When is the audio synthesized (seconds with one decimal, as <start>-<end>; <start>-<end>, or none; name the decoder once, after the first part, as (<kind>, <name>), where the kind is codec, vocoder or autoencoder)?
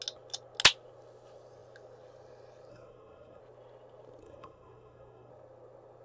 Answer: 2.7-3.4 (codec, SNAC); 4.2-5.3